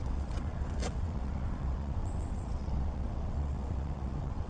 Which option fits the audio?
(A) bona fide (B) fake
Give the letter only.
B